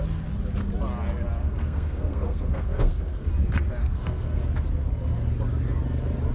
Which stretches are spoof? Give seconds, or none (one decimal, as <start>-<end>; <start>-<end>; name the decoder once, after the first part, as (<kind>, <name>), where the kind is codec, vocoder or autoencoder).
1.4-3.3 (codec, SNAC); 3.8-4.4